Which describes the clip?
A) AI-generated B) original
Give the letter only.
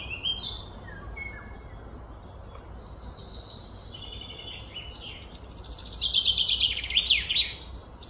B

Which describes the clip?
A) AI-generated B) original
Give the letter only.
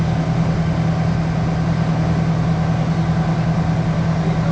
B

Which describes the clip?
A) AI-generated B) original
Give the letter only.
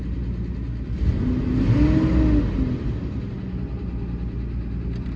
B